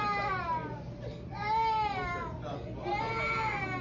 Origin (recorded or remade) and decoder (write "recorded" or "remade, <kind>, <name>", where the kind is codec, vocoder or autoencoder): recorded